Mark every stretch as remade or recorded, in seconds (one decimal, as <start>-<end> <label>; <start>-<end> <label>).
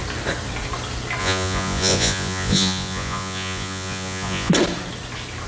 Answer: 0.0-1.2 recorded; 1.2-4.5 remade; 4.5-5.5 recorded